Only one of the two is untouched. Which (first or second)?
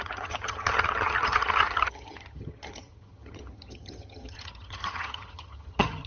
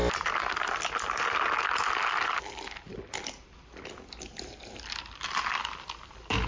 second